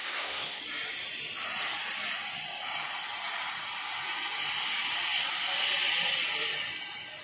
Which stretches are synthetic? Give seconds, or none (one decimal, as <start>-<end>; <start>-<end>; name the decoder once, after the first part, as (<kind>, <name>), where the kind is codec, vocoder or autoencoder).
0.0-0.6 (codec, SNAC)

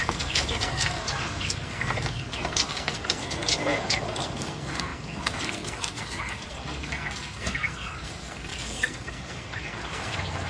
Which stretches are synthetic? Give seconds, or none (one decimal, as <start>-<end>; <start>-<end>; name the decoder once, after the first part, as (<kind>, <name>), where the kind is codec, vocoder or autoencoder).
0.0-10.5 (codec, SNAC)

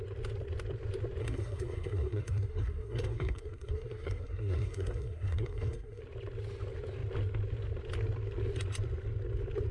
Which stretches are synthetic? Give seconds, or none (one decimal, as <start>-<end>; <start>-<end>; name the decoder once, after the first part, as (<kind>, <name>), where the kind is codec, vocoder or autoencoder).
1.2-6.0 (codec, SNAC)

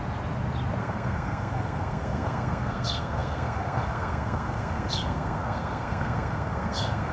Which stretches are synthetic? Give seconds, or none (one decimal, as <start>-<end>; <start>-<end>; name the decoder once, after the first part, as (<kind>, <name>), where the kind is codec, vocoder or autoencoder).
0.8-7.1 (codec, SNAC)

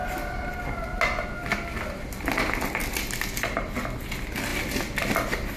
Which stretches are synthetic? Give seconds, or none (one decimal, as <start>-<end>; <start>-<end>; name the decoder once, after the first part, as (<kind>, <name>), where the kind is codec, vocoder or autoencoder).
none